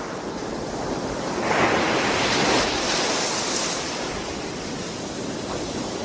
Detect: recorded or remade recorded